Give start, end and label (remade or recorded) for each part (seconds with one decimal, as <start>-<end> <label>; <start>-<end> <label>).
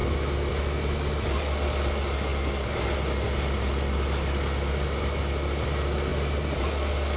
0.0-7.2 recorded